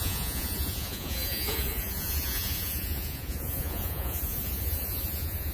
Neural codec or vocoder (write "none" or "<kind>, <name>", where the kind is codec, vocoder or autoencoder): vocoder, Vocos